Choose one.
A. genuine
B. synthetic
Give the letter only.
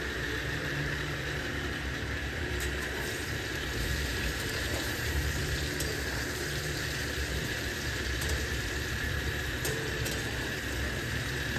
B